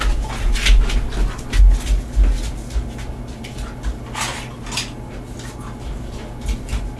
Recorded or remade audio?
recorded